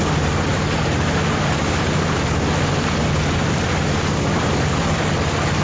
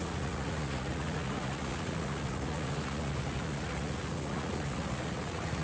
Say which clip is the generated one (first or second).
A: second